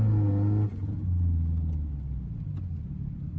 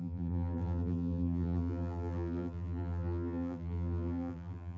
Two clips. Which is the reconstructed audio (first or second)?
second